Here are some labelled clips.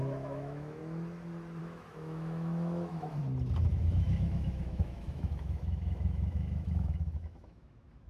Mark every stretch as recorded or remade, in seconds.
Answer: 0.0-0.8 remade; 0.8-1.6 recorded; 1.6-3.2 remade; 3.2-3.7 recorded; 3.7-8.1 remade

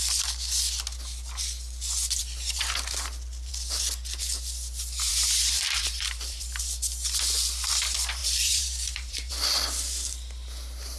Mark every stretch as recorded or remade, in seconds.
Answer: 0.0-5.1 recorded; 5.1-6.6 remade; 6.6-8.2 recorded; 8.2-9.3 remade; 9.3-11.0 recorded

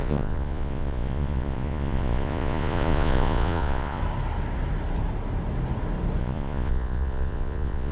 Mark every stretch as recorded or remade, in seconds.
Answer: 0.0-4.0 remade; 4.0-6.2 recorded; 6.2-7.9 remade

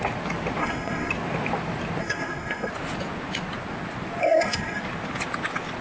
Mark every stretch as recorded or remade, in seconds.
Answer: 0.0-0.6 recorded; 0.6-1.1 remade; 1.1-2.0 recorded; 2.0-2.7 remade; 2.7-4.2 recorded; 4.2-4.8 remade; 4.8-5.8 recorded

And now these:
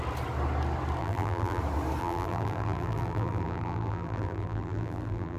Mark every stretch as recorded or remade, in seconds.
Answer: 0.0-1.0 recorded; 1.0-1.6 remade; 1.6-2.0 recorded; 2.0-5.4 remade